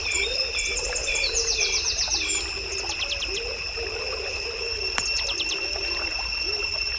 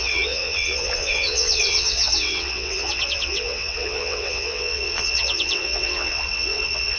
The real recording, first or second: first